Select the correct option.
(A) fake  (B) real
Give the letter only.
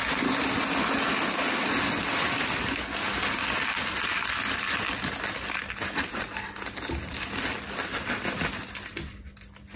B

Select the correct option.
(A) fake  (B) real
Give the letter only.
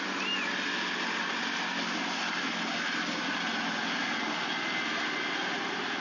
B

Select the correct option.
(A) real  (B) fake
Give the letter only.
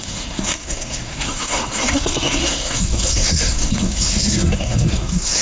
B